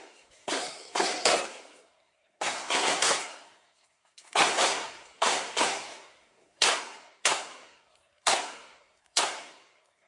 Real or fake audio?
fake